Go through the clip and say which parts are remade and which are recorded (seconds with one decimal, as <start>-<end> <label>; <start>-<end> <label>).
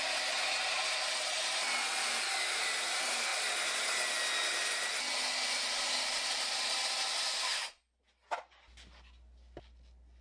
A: 0.0-7.5 recorded; 7.5-8.0 remade; 8.0-10.2 recorded